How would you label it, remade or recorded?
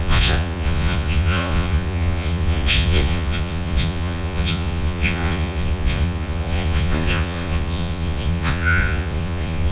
remade